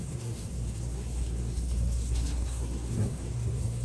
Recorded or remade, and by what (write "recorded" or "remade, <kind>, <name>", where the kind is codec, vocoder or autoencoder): remade, codec, SNAC